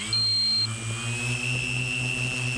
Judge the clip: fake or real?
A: real